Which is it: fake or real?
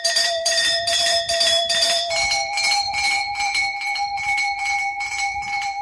fake